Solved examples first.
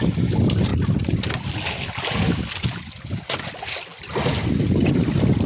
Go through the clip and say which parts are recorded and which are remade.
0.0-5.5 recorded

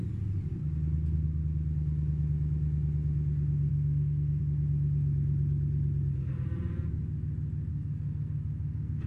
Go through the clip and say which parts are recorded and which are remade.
0.0-3.7 recorded; 3.7-4.4 remade; 4.4-7.7 recorded; 7.7-9.1 remade

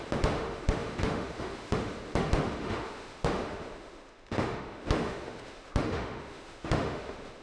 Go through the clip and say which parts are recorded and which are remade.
0.0-7.4 remade

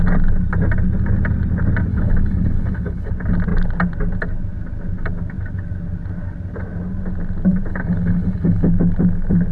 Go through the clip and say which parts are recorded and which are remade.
0.0-1.9 recorded; 1.9-3.1 remade; 3.1-7.7 recorded; 7.7-8.7 remade; 8.7-9.5 recorded

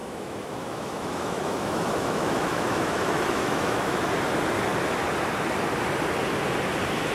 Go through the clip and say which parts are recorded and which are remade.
0.0-4.0 remade; 4.0-7.1 recorded

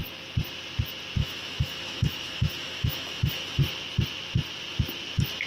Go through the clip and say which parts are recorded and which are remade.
0.0-1.2 recorded; 1.2-3.6 remade; 3.6-5.5 recorded